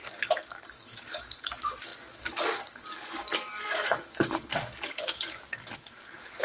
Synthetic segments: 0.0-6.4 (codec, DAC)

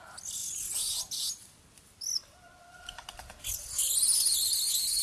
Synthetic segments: none

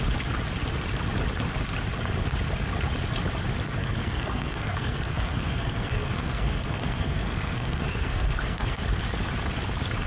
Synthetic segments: 3.8-8.8 (codec, SNAC)